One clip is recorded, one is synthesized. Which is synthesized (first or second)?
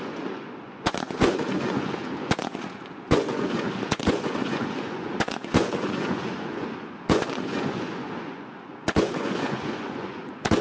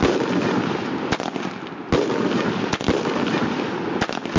first